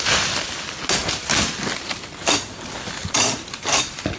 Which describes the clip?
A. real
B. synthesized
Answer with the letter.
A